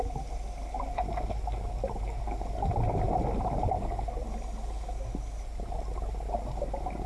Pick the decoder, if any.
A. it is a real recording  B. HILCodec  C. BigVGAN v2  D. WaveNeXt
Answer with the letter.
A